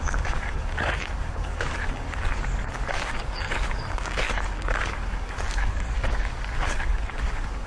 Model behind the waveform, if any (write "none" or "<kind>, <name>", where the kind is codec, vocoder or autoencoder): codec, DAC